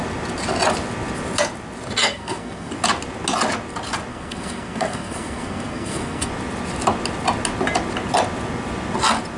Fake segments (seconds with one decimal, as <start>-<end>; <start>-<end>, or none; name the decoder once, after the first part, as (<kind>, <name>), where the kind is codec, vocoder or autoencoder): 2.0-2.7 (codec, SNAC); 4.1-6.3